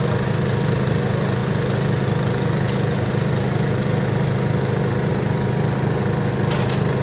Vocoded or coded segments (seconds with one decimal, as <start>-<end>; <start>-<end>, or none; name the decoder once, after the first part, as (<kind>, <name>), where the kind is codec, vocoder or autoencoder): none